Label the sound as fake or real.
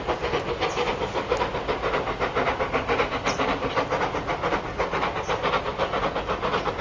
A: real